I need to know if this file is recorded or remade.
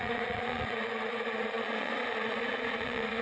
remade